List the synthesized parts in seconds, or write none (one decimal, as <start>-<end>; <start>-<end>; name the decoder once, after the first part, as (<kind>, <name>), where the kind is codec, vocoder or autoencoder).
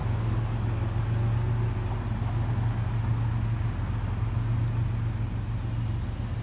0.0-1.0 (codec, DAC)